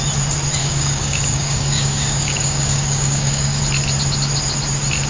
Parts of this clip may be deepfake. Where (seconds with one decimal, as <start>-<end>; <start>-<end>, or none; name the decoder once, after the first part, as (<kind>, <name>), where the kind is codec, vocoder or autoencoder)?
0.6-3.6 (codec, DAC)

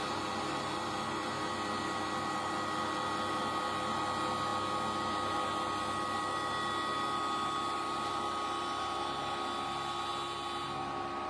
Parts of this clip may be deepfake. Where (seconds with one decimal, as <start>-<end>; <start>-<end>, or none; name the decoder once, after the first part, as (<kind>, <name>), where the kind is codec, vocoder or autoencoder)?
none

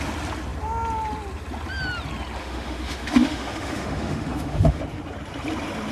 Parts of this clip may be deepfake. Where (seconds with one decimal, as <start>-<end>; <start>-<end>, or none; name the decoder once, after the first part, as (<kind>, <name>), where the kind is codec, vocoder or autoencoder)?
2.4-4.8 (autoencoder, DAC-VAE)